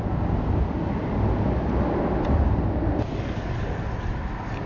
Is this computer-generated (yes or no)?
no